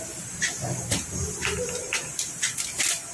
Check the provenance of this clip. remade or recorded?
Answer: recorded